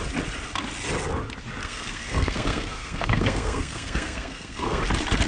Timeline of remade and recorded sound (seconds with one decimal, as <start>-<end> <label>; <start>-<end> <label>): 0.0-1.6 recorded; 1.6-4.8 remade; 4.8-5.3 recorded